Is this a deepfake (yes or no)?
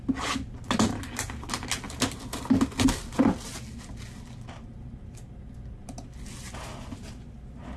no